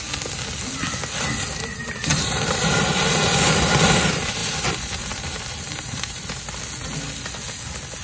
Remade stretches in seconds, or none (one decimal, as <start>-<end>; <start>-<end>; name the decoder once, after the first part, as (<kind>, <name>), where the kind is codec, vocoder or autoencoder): 2.1-2.8 (vocoder, BigVGAN v2); 4.4-6.4